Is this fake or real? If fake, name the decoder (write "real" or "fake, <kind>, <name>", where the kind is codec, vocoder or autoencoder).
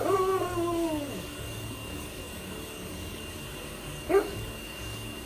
fake, codec, DAC